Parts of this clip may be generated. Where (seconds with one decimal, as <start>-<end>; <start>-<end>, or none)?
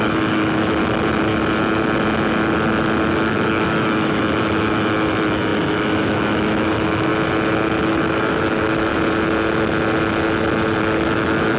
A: 0.0-0.8; 3.1-7.1; 7.8-8.9; 10.8-11.6